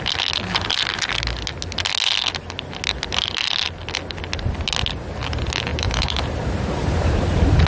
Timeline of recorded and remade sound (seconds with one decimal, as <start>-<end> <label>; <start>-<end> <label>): 0.0-5.7 recorded; 5.7-7.1 remade; 7.1-7.7 recorded

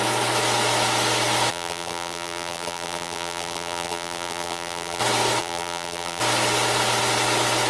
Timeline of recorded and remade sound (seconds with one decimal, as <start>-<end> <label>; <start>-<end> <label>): 0.0-1.5 recorded; 1.5-5.0 remade; 5.0-5.4 recorded; 5.4-6.2 remade; 6.2-7.7 recorded

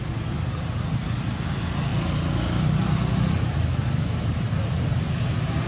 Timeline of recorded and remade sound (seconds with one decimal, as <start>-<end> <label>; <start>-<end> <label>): 0.0-5.7 recorded

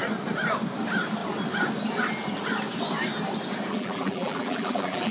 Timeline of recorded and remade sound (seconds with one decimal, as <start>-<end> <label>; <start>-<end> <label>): 0.0-3.7 recorded; 3.7-5.1 remade

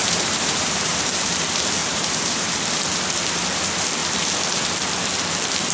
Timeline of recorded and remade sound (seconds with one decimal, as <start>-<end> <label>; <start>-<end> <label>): 0.0-1.4 remade; 1.4-1.8 recorded; 1.8-2.5 remade; 2.5-5.7 recorded

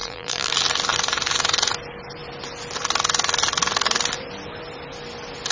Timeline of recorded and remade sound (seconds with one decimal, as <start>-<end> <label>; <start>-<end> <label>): 0.0-0.5 remade; 0.5-5.5 recorded

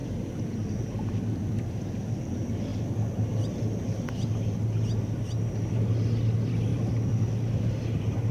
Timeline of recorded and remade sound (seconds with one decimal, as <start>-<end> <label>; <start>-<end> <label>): 0.0-6.7 recorded; 6.7-7.7 remade; 7.7-8.3 recorded

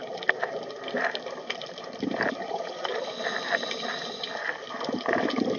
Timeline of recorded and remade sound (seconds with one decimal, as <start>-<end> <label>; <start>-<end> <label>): 0.0-3.4 remade; 3.4-5.6 recorded